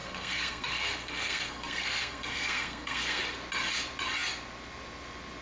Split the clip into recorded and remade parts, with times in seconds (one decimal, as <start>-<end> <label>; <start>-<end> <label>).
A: 0.0-3.2 remade; 3.2-5.4 recorded